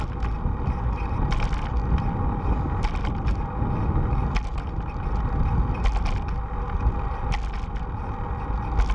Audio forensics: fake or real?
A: real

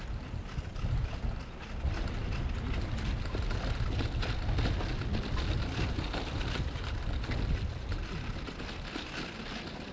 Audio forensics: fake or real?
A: real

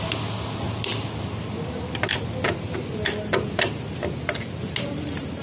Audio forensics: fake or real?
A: real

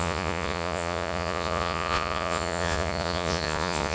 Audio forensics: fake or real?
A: fake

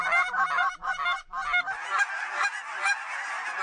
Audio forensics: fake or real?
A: real